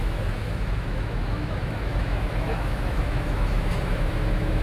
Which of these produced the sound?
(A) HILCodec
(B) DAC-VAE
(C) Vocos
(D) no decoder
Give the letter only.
B